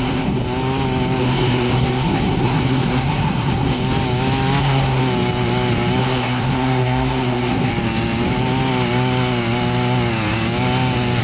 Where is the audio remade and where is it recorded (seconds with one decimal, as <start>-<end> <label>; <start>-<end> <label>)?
0.0-0.4 remade; 0.4-1.2 recorded; 1.2-3.8 remade; 3.8-4.6 recorded; 4.6-5.0 remade; 5.0-6.0 recorded; 6.0-7.7 remade; 7.7-11.2 recorded